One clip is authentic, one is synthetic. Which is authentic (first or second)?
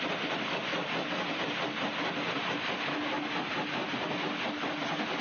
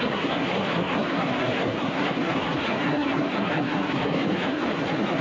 first